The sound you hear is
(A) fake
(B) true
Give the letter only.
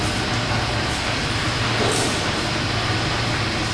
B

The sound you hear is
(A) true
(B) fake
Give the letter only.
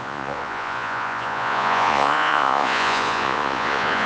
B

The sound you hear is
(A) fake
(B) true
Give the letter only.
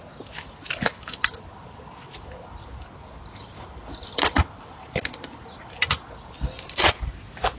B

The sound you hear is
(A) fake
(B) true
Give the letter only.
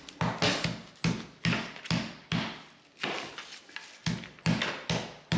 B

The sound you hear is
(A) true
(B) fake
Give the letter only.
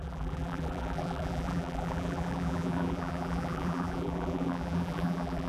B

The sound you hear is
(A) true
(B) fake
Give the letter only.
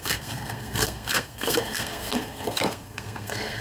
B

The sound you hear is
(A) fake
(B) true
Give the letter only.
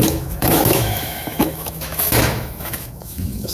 A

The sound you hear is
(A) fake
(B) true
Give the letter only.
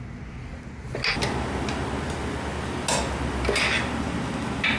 B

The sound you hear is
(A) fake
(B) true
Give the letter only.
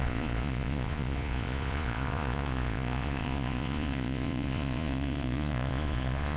A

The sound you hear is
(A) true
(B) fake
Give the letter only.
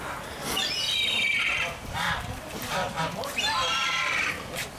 B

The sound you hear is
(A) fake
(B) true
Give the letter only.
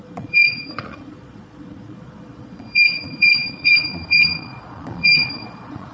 A